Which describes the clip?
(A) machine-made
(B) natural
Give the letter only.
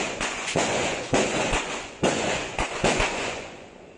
A